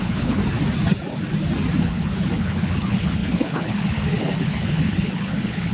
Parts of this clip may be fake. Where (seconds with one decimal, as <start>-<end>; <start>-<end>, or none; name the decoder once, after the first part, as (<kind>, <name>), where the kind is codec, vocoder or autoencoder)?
0.0-0.4 (codec, HILCodec); 1.8-5.7